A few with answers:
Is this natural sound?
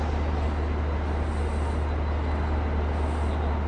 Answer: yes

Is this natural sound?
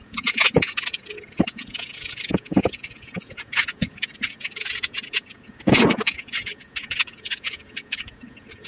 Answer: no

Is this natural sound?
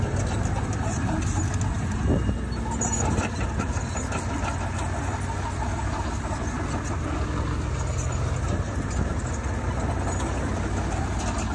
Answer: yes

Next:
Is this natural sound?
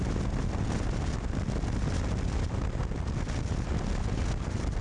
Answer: yes